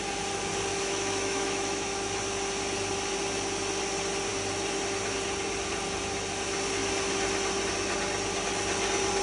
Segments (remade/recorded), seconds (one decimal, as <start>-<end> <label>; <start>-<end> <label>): 0.0-0.7 recorded; 0.7-2.2 remade; 2.2-9.2 recorded